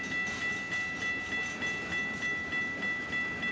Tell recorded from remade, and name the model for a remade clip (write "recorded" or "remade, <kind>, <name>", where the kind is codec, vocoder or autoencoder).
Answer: recorded